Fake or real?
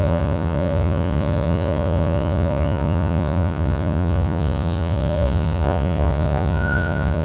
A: fake